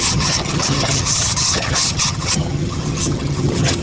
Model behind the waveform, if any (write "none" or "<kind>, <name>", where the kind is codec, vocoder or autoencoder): vocoder, HiFi-GAN